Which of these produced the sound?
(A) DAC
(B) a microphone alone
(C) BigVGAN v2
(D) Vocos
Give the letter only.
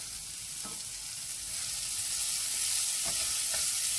B